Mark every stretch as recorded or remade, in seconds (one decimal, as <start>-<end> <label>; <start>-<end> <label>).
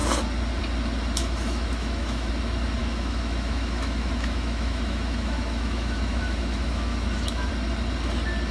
0.0-1.2 recorded; 1.2-2.3 remade; 2.3-2.8 recorded; 2.8-7.5 remade; 7.5-8.5 recorded